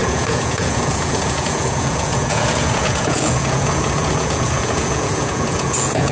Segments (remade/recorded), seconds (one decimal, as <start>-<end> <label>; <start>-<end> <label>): 0.0-6.1 remade